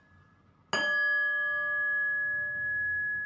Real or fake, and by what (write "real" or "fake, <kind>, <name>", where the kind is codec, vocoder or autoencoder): real